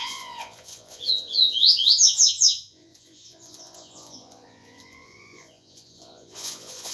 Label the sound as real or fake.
fake